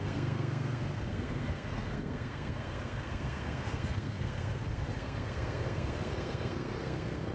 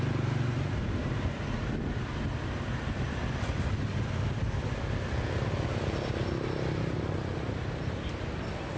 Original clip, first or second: second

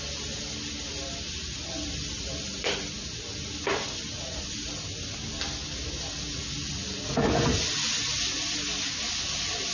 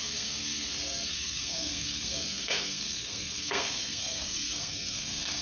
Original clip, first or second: first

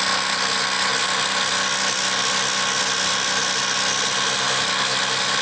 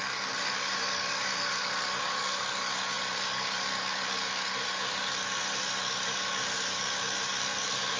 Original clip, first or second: first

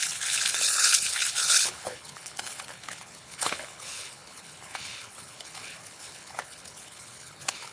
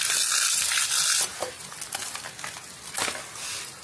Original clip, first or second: second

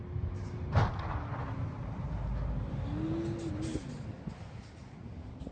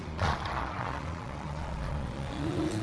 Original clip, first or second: first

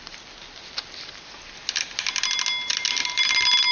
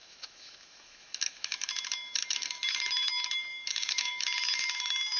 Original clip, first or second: first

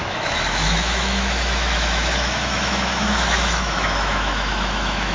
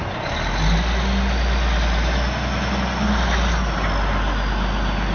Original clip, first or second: second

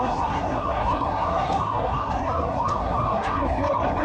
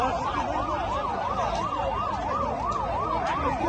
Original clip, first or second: second